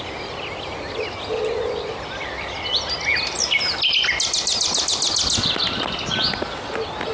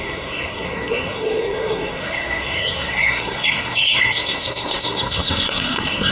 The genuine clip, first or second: first